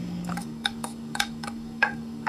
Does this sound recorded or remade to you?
remade